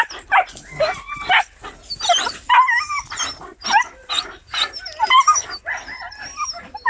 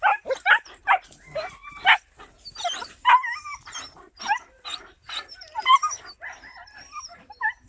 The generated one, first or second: second